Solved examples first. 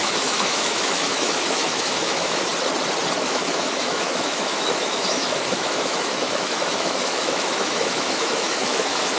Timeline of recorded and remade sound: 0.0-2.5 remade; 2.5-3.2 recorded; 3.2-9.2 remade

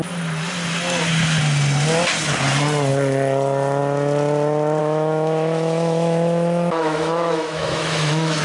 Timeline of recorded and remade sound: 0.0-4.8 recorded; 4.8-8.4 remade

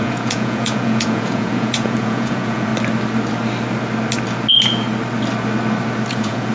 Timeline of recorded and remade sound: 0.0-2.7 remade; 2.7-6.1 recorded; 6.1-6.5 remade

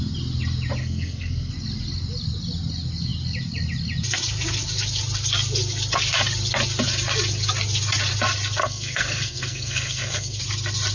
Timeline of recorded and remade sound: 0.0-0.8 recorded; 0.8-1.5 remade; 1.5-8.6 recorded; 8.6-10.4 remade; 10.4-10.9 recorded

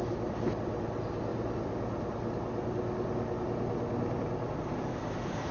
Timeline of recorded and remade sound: 0.0-0.5 remade; 0.5-5.5 recorded